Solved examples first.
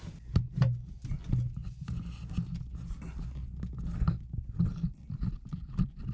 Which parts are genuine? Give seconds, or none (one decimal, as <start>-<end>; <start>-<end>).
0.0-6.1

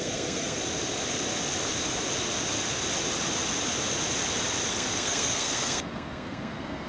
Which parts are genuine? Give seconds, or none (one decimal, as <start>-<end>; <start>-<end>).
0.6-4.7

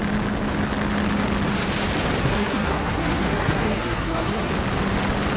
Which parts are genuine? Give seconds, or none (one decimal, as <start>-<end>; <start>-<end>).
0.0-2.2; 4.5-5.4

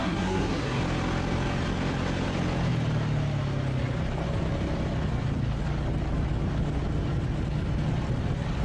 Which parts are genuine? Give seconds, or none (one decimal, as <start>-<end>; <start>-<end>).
0.8-8.6